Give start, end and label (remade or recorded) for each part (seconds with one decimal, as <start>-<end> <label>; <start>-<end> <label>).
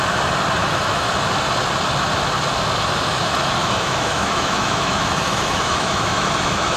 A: 0.0-0.6 recorded; 0.6-1.1 remade; 1.1-3.6 recorded; 3.6-6.8 remade